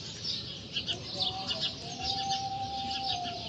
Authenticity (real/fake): real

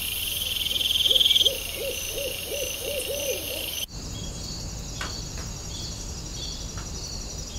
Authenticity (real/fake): fake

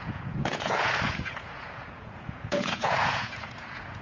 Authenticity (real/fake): fake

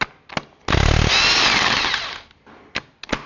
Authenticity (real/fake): real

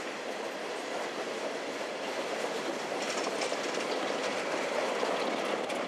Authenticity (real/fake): real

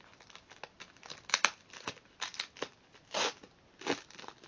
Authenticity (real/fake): real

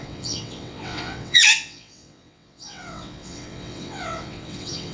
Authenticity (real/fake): fake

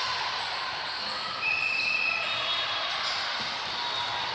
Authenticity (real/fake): real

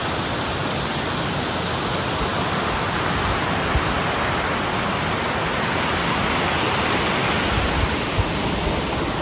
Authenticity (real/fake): real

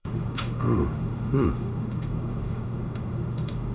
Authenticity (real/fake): fake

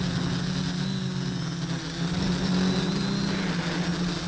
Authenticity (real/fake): real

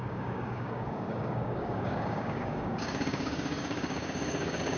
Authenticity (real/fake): fake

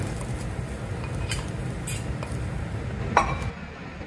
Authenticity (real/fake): real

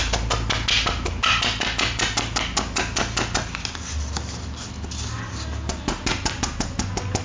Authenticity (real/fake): real